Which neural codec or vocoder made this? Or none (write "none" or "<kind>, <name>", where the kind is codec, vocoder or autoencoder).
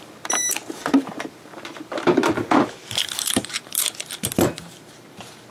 vocoder, BigVGAN v2